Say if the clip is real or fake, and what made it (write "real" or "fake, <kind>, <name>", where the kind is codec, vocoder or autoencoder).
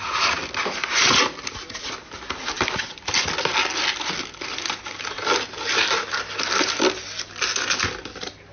real